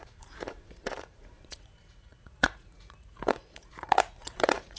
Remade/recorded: remade